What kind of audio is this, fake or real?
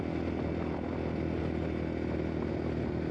real